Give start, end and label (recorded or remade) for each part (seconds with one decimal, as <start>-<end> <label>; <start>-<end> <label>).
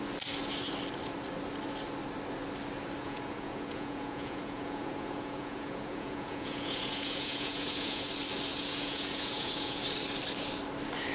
0.0-3.0 recorded; 3.0-8.1 remade; 8.1-8.5 recorded; 8.5-9.8 remade; 9.8-11.1 recorded